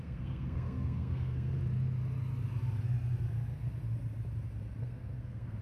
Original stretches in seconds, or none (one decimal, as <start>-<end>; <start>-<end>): 1.6-4.8